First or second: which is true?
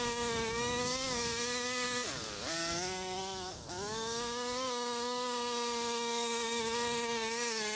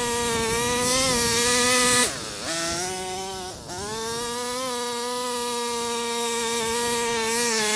second